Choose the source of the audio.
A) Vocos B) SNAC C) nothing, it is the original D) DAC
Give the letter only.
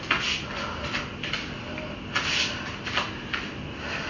C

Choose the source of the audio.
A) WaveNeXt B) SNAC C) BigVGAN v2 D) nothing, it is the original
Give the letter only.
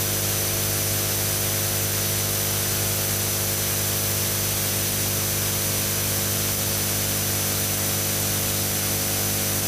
D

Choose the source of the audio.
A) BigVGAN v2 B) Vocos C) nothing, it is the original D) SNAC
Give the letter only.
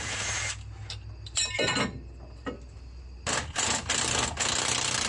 C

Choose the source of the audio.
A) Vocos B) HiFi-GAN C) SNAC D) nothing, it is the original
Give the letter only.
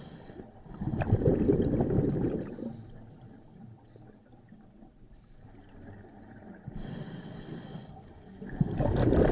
D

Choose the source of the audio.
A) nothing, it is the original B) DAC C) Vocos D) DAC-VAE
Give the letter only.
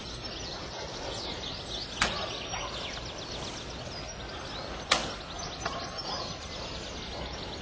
A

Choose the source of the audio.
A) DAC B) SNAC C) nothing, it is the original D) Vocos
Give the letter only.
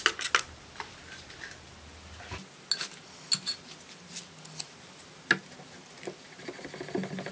C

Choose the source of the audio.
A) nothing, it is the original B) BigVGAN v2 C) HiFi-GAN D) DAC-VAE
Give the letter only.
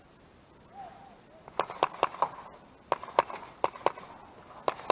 A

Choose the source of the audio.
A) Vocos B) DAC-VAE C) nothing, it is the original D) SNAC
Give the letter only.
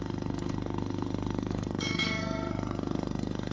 D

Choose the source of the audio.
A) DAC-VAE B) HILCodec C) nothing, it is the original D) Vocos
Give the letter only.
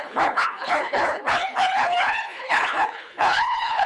B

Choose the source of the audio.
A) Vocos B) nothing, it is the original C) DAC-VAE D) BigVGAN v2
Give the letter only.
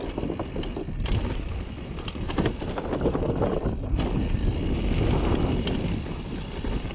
B